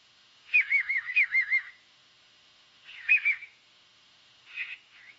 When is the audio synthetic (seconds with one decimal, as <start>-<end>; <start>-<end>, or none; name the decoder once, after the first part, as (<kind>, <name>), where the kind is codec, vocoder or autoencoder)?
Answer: 0.0-5.2 (autoencoder, DAC-VAE)